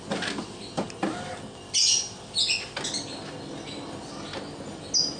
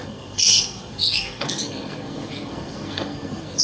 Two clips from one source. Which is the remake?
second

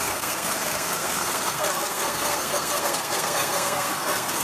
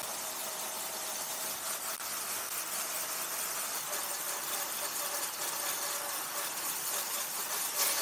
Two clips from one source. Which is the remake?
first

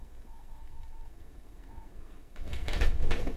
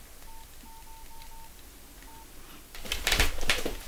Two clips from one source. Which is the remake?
first